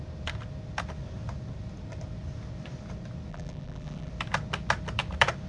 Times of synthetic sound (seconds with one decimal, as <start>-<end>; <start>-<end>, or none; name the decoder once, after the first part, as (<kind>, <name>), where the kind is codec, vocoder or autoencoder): 3.3-4.1 (vocoder, BigVGAN v2)